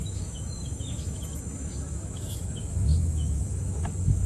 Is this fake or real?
fake